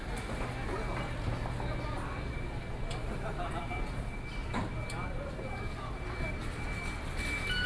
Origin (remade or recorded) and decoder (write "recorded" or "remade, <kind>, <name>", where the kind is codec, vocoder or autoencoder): recorded